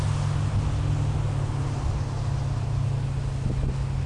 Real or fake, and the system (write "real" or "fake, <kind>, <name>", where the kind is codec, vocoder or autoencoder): real